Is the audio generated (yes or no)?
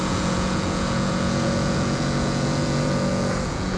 yes